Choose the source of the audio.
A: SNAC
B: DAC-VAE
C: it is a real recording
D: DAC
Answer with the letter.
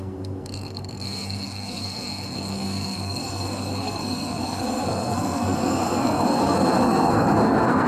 A